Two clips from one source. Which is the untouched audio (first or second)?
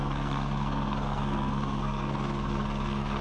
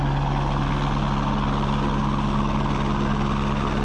second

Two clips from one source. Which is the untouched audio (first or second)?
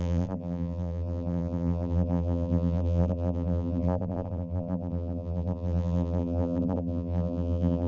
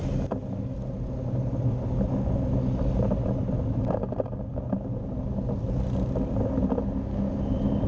second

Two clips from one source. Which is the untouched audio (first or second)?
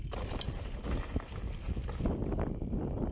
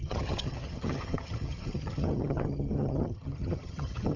first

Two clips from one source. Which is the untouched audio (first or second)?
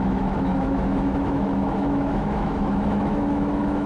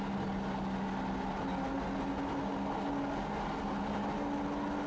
second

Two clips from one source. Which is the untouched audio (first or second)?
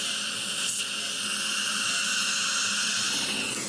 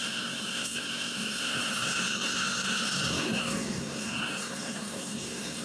first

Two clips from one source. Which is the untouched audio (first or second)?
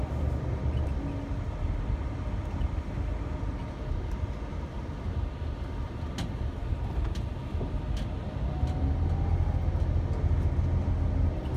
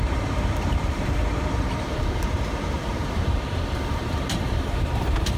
first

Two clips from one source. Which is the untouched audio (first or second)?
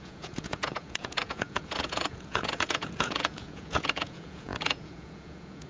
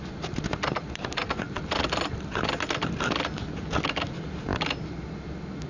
second